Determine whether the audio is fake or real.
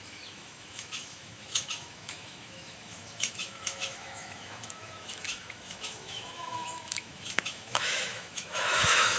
fake